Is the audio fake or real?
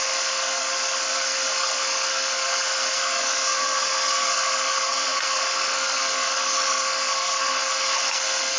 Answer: fake